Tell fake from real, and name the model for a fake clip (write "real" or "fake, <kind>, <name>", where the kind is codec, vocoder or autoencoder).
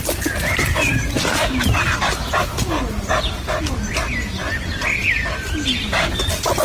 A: real